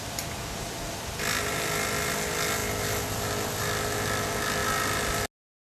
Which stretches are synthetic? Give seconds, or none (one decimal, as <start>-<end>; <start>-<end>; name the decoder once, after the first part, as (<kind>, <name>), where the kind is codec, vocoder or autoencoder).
none